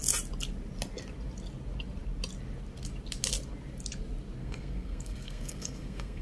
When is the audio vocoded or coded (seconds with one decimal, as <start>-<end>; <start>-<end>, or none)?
4.4-6.2